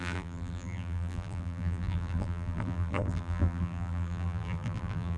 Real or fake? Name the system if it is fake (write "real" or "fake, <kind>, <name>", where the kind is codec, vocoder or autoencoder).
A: fake, vocoder, BigVGAN v2